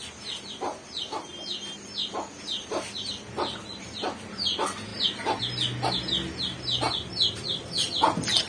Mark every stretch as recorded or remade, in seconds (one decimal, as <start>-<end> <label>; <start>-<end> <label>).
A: 0.0-8.5 recorded